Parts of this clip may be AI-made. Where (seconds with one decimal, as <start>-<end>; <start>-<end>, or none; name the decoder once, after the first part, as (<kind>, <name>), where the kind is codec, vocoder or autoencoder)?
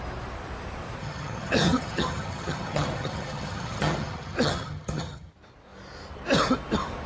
1.0-5.3 (vocoder, HiFi-GAN)